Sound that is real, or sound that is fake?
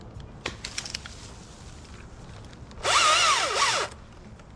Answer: real